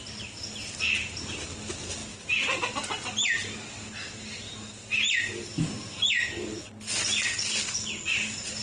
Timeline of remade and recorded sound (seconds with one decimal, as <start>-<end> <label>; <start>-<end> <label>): 0.0-8.6 recorded